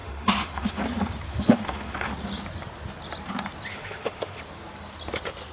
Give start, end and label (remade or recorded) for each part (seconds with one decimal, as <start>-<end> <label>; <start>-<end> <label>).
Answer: 0.0-0.8 remade; 0.8-1.3 recorded; 1.3-2.1 remade; 2.1-3.7 recorded; 3.7-4.4 remade; 4.4-5.5 recorded